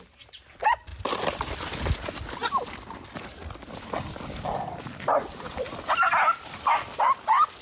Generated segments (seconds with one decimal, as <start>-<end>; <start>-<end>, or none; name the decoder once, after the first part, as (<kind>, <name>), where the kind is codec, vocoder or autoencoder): none